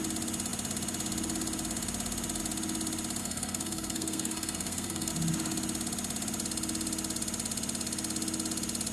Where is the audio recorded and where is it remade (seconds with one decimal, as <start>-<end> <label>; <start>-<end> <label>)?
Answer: 0.0-3.2 recorded; 3.2-5.1 remade; 5.1-8.9 recorded

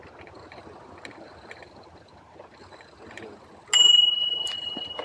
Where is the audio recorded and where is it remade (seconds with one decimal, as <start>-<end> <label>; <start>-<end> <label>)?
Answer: 0.0-4.2 recorded; 4.2-5.0 remade